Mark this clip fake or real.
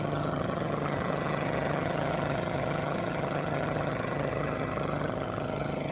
fake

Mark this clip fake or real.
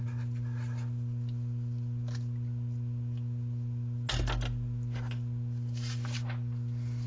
real